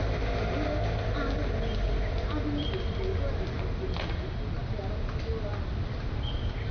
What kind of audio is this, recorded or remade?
recorded